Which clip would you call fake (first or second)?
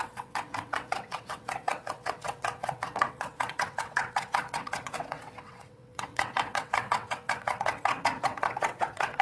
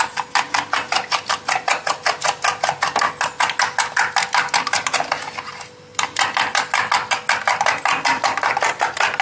first